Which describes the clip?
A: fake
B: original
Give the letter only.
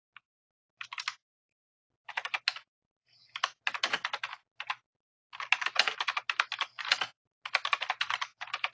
B